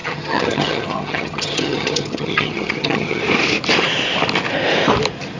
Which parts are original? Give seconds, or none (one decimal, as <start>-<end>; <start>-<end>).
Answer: 3.2-5.4